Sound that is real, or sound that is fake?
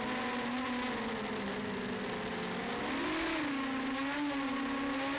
real